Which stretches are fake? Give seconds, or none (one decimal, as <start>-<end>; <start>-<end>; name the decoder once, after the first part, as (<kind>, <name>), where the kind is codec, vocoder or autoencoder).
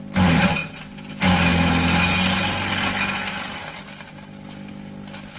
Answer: none